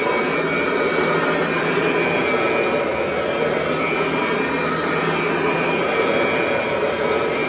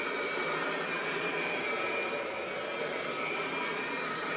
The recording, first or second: first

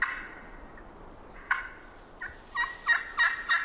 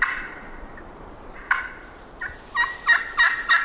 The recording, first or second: first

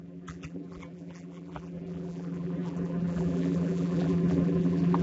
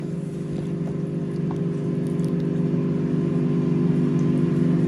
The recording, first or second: second